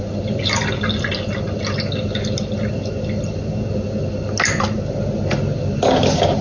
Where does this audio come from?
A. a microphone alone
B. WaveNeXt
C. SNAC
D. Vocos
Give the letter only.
A